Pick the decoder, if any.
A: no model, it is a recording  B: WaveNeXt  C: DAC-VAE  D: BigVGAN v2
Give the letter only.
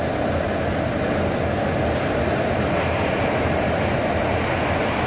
A